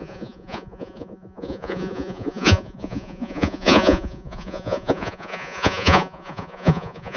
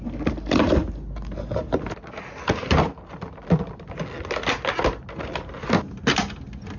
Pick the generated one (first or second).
first